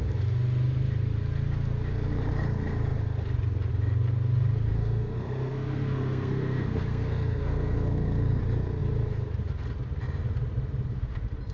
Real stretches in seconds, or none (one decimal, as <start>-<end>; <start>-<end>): 0.0-4.7; 8.4-11.5